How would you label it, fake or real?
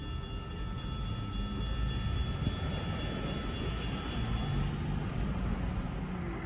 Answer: real